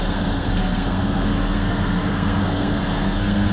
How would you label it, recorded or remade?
remade